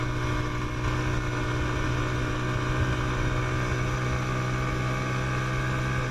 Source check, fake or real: real